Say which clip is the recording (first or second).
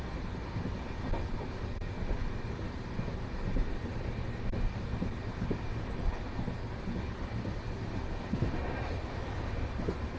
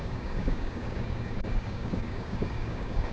first